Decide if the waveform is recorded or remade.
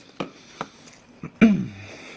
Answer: recorded